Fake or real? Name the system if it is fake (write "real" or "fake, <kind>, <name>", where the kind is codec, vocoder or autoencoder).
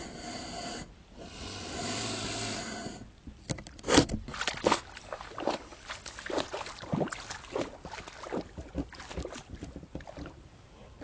real